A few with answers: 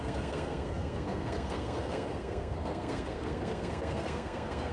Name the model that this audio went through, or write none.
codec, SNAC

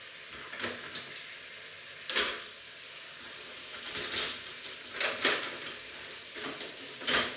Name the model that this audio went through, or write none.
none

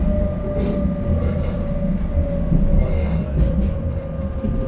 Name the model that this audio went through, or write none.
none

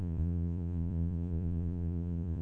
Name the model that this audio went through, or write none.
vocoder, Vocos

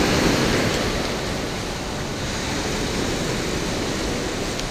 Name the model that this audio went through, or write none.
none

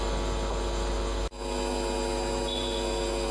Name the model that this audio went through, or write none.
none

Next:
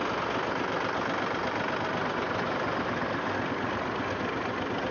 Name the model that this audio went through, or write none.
none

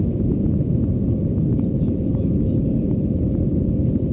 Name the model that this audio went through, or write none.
none